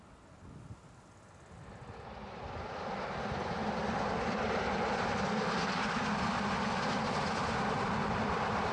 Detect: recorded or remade recorded